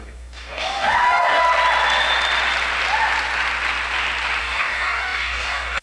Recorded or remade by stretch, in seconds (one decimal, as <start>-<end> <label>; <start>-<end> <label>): 0.0-1.4 remade; 1.4-4.4 recorded; 4.4-5.8 remade